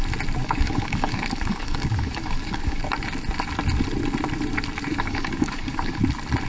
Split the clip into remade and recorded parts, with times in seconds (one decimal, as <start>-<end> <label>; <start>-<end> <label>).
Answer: 0.0-0.4 recorded; 0.4-2.8 remade; 2.8-4.9 recorded; 4.9-6.0 remade; 6.0-6.5 recorded